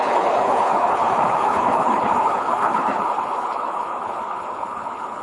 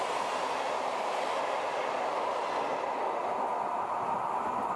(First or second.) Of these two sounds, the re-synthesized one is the first